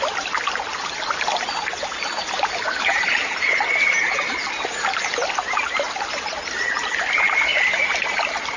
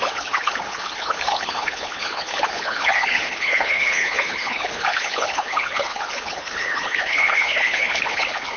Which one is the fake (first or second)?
second